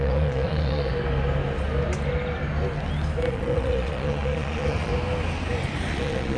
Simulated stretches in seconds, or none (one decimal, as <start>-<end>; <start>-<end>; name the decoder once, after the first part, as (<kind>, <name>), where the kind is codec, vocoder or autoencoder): 0.0-0.9 (vocoder, Vocos); 3.3-4.9; 5.9-6.4